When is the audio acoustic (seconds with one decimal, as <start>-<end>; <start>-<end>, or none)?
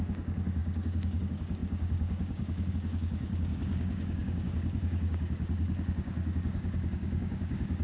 none